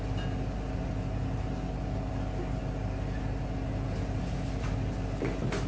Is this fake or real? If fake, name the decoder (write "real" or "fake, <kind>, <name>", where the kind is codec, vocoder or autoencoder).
real